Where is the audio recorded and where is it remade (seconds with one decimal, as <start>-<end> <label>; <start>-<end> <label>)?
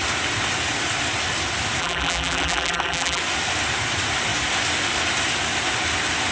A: 0.0-1.8 recorded; 1.8-3.2 remade; 3.2-6.3 recorded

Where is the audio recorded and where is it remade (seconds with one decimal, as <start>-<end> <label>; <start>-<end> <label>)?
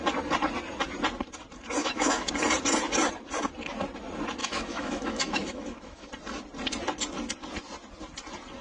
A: 0.0-1.8 recorded; 1.8-2.3 remade; 2.3-4.4 recorded; 4.4-6.1 remade; 6.1-8.6 recorded